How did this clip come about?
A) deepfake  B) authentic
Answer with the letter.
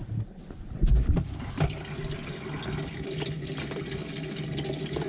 B